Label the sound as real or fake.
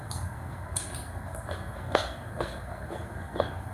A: fake